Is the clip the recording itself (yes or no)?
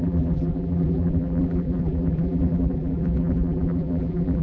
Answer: no